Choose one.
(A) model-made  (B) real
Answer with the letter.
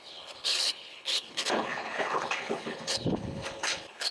A